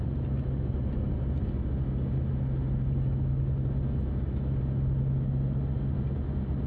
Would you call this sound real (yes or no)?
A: yes